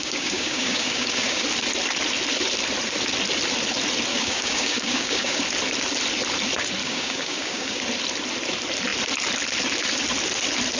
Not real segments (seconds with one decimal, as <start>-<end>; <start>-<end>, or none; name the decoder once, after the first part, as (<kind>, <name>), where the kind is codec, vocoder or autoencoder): 0.0-1.4 (codec, DAC); 4.1-5.4; 6.8-7.8